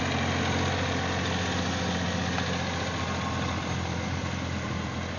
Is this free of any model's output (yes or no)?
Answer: yes